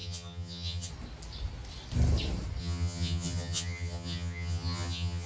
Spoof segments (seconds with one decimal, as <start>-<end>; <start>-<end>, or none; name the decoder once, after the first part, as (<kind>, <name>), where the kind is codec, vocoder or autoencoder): 0.0-0.9 (vocoder, HiFi-GAN); 2.6-5.3